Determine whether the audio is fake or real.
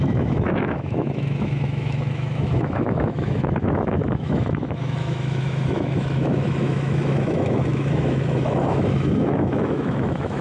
fake